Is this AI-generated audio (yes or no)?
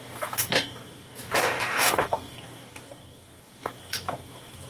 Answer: yes